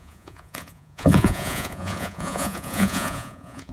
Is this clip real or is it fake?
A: fake